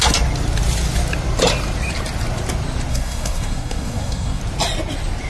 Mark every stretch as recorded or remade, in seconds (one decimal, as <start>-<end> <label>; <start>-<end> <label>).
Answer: 0.0-2.9 recorded; 2.9-4.4 remade; 4.4-5.3 recorded